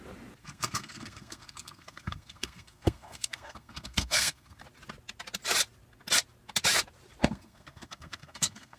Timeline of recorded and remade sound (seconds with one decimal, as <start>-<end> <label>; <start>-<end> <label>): 0.0-0.4 recorded; 0.4-4.6 remade; 4.6-7.2 recorded; 7.2-8.8 remade